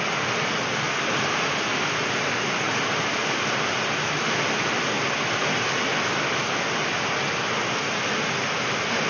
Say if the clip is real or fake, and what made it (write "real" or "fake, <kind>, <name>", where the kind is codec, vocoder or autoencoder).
real